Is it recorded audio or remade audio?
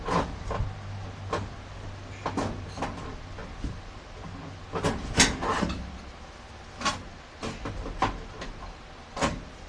recorded